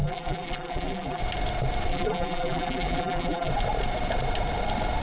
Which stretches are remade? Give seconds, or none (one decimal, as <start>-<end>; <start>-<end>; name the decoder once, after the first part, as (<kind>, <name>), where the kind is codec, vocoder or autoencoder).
0.0-1.2 (vocoder, BigVGAN v2); 1.9-3.5